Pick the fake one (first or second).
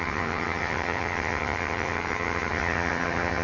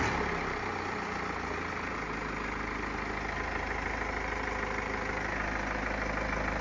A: first